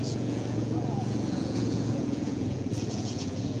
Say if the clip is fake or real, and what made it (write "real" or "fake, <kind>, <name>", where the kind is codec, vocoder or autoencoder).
fake, vocoder, Vocos